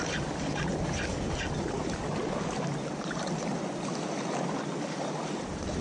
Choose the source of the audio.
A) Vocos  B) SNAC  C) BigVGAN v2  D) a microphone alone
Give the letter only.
D